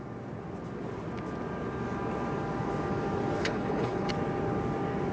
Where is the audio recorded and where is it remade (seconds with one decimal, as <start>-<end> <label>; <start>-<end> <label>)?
0.0-3.4 recorded; 3.4-4.1 remade; 4.1-5.1 recorded